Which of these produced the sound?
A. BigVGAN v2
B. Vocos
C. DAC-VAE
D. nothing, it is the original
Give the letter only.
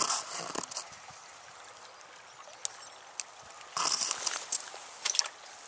D